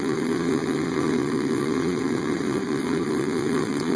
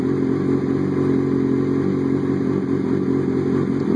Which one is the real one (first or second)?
second